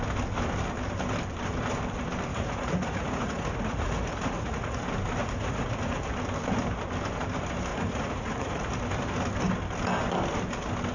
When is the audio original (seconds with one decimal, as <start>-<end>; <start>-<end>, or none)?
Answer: 0.0-2.3; 4.8-5.2; 6.1-7.7; 8.7-10.9